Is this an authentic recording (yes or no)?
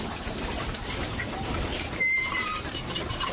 no